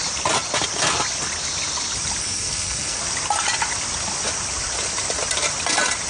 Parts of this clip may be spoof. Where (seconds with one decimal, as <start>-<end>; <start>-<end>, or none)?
2.2-3.0